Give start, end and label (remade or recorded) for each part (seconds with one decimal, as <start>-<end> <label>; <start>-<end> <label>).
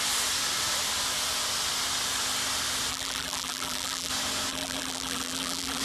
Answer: 0.0-2.9 recorded; 2.9-4.1 remade; 4.1-4.5 recorded; 4.5-5.8 remade